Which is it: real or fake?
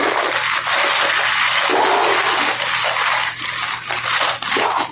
real